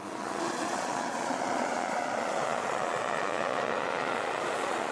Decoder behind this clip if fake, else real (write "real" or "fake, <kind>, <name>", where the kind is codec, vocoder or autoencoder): fake, vocoder, Vocos